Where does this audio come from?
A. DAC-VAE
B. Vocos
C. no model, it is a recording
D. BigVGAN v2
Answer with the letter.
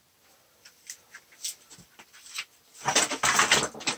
C